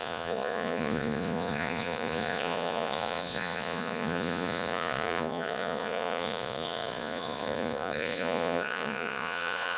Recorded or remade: remade